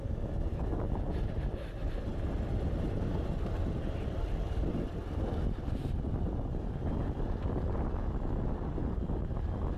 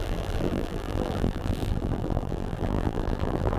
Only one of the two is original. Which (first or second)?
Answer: first